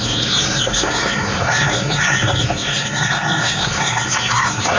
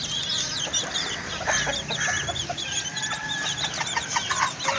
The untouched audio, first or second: second